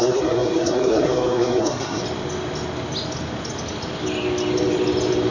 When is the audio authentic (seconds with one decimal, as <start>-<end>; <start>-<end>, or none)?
2.0-5.3